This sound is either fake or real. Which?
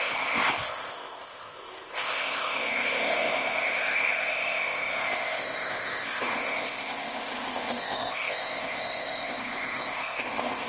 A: fake